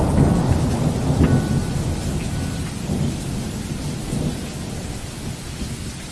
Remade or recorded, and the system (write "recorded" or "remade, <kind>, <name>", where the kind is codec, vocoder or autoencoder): recorded